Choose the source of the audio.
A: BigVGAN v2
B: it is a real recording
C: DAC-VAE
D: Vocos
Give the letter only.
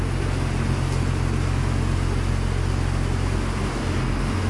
B